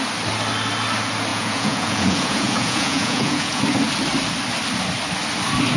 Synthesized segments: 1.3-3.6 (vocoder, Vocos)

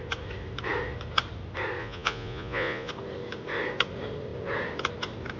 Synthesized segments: 1.8-2.9 (vocoder, Vocos)

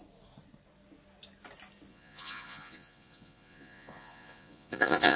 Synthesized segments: 1.9-5.2 (vocoder, Vocos)

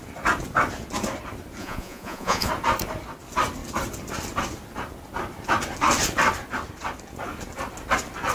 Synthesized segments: 1.6-2.5 (vocoder, Vocos)

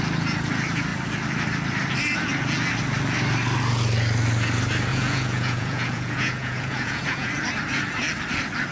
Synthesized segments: 4.9-7.3 (vocoder, Vocos)

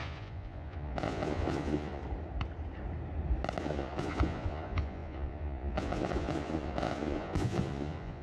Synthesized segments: 0.0-2.0 (vocoder, Vocos); 3.6-8.2

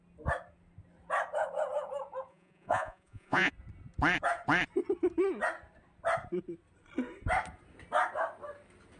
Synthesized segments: 2.3-3.5 (vocoder, Vocos)